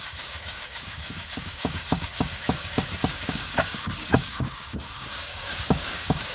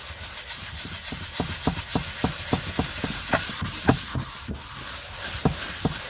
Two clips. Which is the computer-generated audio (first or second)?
first